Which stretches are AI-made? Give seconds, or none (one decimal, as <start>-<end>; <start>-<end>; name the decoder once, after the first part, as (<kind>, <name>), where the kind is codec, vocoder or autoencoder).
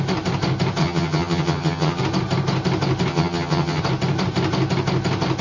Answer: 0.8-2.0 (vocoder, HiFi-GAN); 3.1-3.8